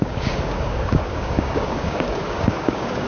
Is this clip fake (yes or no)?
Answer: yes